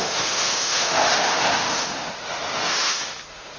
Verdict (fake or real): fake